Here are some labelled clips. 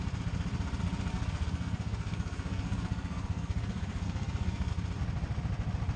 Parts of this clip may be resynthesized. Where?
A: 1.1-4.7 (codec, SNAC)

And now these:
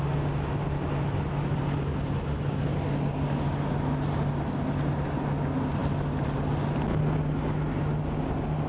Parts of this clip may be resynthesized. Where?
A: none

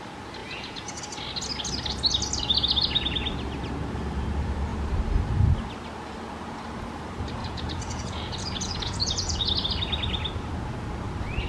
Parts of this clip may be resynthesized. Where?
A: 0.4-1.0 (vocoder, Vocos); 7.4-9.5